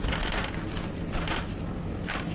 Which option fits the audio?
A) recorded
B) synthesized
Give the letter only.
A